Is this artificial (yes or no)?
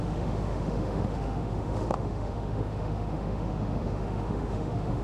yes